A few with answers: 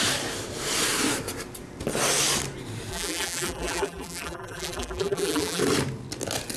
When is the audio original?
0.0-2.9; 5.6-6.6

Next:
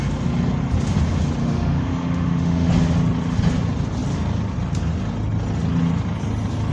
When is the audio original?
0.0-1.4; 2.7-6.7

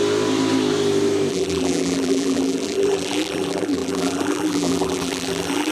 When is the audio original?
0.0-1.3

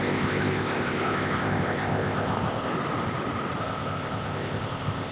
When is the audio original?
2.7-3.6

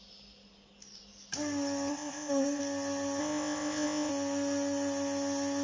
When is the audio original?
0.0-1.9; 2.6-3.2; 4.1-5.6

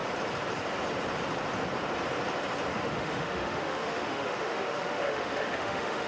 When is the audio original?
0.0-2.7

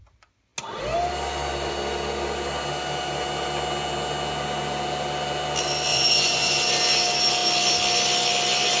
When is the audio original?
0.0-5.9; 6.5-8.8